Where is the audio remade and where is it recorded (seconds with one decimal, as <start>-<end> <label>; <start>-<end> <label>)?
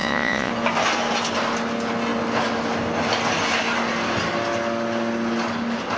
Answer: 0.0-0.5 remade; 0.5-6.0 recorded